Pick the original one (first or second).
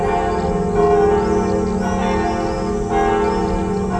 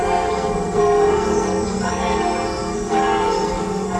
first